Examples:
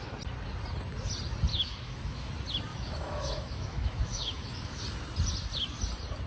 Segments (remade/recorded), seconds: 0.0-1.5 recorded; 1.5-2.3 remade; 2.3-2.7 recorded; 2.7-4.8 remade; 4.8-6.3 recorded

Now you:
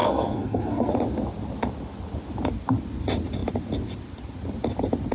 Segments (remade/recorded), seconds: 0.0-0.9 remade; 0.9-5.1 recorded

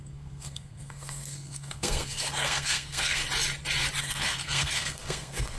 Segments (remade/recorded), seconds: 0.0-3.2 remade; 3.2-4.0 recorded; 4.0-5.6 remade

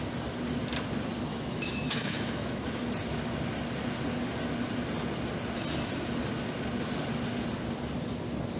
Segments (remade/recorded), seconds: 0.0-1.3 recorded; 1.3-2.8 remade; 2.8-8.6 recorded

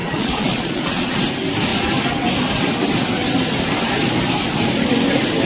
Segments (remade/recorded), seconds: 0.0-1.2 remade; 1.2-5.4 recorded

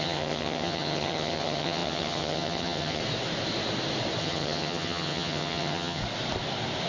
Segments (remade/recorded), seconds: 0.0-3.0 remade; 3.0-4.2 recorded; 4.2-6.0 remade; 6.0-6.9 recorded

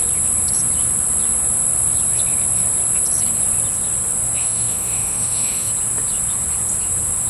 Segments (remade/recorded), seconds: 0.0-4.4 recorded; 4.4-5.7 remade; 5.7-7.3 recorded